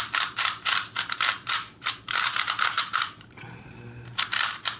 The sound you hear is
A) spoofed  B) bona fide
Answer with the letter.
A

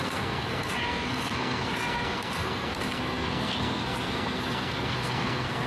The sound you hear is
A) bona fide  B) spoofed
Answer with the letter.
B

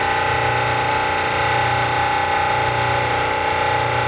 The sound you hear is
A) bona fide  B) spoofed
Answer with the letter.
A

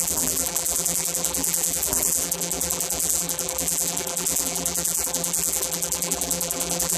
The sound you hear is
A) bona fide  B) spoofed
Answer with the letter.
B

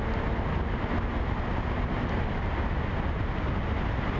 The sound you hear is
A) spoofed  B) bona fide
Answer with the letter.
B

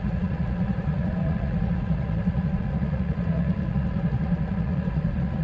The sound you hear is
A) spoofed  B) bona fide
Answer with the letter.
A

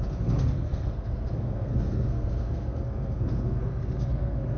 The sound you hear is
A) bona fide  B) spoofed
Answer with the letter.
B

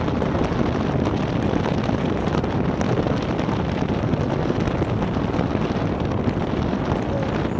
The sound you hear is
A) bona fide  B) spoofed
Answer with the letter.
A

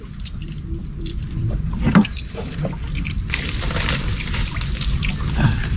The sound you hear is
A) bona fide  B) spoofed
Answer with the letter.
B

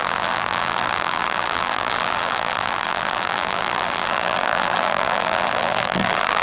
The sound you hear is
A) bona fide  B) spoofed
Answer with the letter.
B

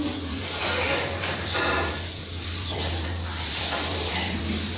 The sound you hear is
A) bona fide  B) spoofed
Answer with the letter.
B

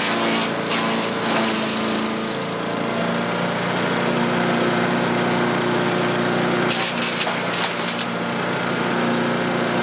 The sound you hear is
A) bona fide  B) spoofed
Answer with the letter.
A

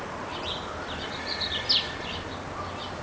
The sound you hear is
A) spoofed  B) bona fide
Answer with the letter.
B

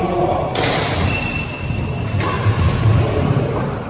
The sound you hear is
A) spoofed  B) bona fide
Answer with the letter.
B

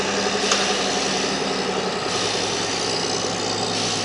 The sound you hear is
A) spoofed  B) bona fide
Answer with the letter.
B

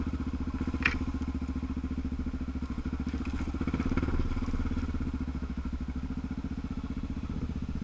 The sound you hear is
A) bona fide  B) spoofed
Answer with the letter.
A